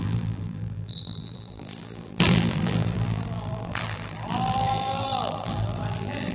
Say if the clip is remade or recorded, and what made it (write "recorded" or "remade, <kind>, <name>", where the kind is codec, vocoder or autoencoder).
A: remade, vocoder, BigVGAN v2